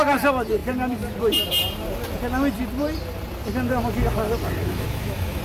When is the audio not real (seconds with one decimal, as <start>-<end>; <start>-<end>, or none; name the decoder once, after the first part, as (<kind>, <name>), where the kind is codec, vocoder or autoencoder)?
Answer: 4.6-5.4 (autoencoder, DAC-VAE)